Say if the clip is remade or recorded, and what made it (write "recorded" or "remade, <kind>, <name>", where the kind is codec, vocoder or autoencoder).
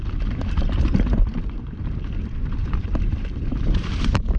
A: remade, vocoder, BigVGAN v2